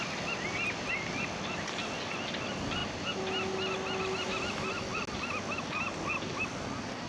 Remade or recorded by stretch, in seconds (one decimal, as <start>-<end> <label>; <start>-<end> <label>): 0.0-7.1 recorded